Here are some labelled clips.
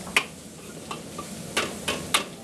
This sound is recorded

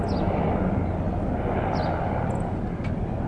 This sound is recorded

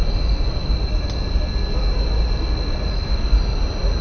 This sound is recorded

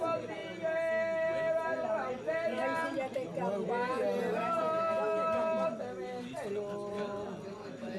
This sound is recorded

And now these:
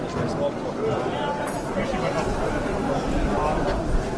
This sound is recorded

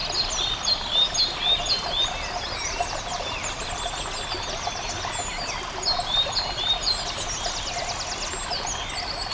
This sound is recorded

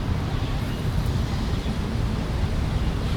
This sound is remade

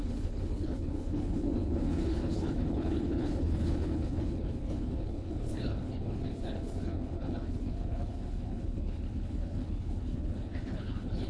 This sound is remade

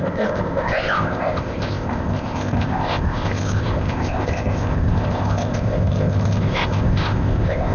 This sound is remade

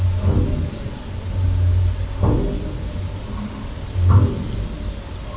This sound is recorded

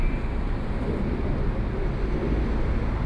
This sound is recorded